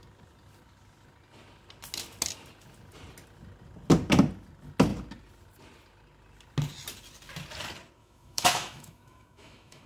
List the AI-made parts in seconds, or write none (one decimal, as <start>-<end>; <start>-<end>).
8.0-9.9